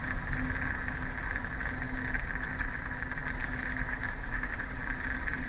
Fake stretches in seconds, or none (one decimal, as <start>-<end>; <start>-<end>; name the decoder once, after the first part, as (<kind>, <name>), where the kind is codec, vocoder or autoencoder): 3.4-4.8 (autoencoder, DAC-VAE)